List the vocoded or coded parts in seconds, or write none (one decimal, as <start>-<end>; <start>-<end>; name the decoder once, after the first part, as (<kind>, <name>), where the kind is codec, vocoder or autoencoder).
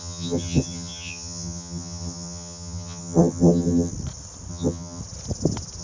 0.0-3.9 (vocoder, HiFi-GAN); 4.5-5.0